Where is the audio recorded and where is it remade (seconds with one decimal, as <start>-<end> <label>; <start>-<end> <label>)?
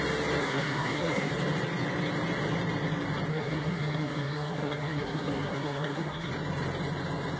0.0-0.4 recorded; 0.4-1.3 remade; 1.3-3.3 recorded; 3.3-6.3 remade; 6.3-7.4 recorded